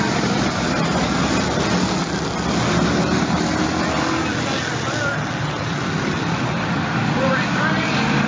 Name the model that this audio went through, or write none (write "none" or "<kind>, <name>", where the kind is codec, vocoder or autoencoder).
none